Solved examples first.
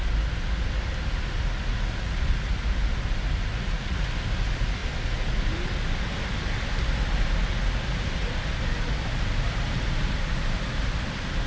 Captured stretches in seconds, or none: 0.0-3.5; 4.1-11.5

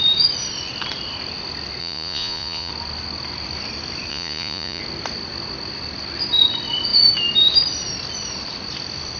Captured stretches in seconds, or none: 0.0-1.8; 2.7-4.1; 4.8-9.2